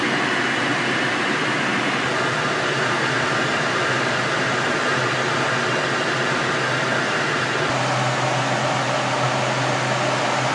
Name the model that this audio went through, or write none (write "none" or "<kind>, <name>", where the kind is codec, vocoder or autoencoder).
none